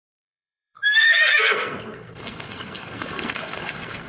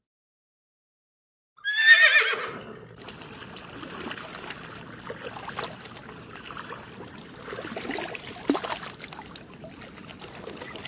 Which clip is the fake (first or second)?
first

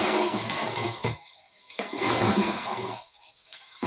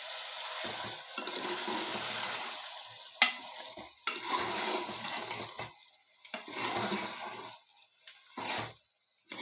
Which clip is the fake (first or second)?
first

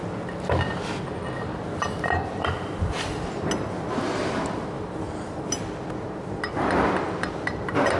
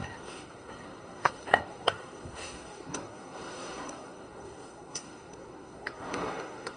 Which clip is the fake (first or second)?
second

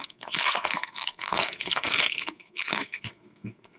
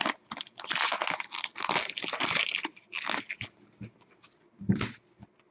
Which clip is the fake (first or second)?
first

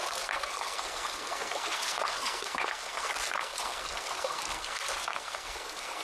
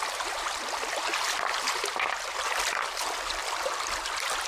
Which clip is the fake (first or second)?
first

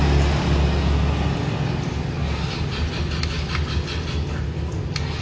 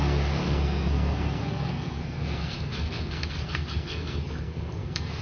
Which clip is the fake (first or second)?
second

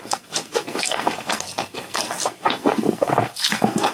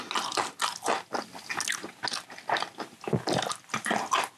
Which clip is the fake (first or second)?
first